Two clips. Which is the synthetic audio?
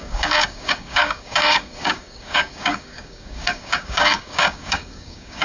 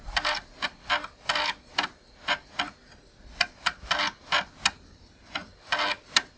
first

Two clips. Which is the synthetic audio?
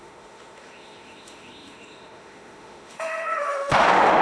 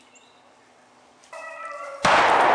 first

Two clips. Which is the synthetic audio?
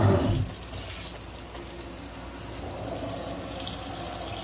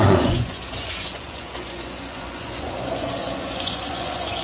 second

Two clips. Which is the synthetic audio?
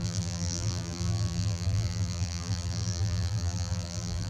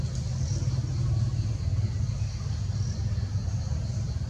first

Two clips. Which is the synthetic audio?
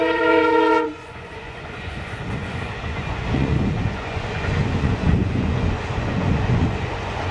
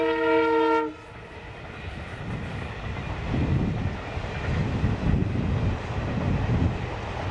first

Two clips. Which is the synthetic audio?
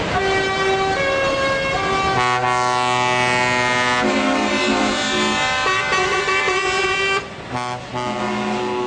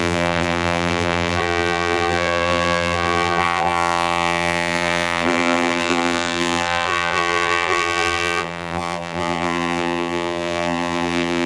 second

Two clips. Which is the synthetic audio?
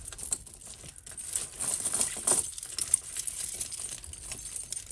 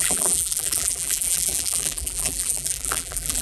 second